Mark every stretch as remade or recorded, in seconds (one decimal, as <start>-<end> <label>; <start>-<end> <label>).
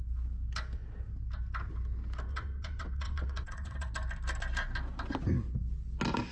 0.0-2.3 recorded; 2.3-3.9 remade; 3.9-6.3 recorded